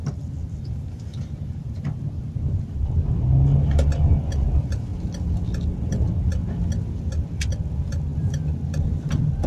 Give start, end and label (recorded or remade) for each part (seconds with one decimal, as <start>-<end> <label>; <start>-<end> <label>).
0.0-2.2 remade; 2.2-9.5 recorded